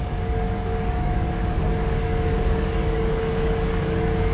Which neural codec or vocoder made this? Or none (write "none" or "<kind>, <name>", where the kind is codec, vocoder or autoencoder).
codec, DAC